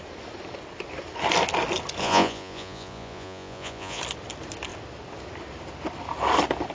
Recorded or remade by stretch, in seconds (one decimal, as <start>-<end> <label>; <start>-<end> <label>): 0.0-2.0 recorded; 2.0-4.0 remade; 4.0-6.7 recorded